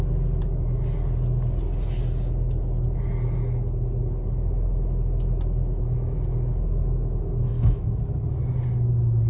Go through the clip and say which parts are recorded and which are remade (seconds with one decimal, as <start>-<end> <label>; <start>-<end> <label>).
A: 0.0-7.5 recorded; 7.5-8.0 remade; 8.0-9.3 recorded